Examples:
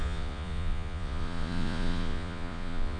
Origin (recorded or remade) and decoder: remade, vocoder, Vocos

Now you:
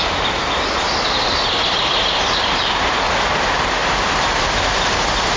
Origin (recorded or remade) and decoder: recorded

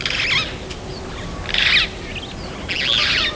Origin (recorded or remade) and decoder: recorded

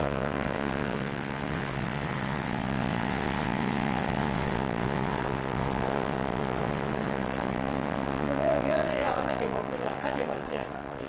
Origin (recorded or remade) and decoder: remade, vocoder, WaveNeXt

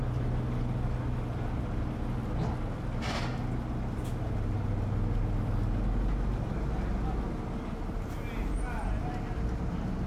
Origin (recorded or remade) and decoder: recorded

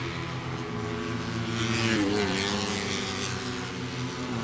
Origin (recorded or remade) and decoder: recorded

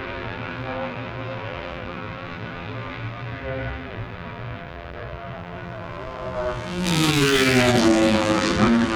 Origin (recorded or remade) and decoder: remade, vocoder, BigVGAN v2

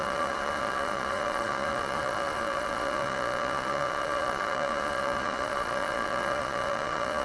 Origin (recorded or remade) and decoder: remade, vocoder, Vocos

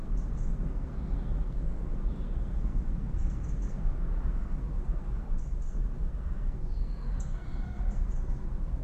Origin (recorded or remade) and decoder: remade, codec, SNAC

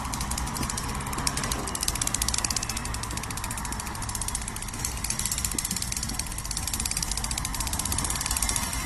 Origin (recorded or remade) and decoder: recorded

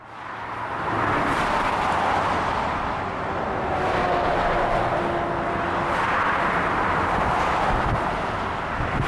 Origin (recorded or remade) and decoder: recorded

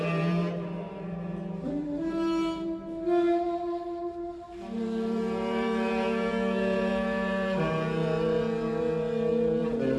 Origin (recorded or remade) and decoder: remade, vocoder, BigVGAN v2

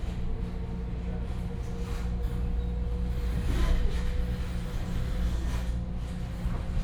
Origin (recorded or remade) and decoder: recorded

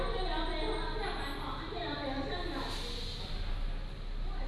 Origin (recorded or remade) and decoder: recorded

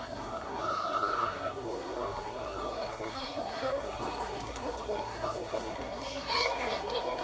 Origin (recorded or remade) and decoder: remade, codec, SNAC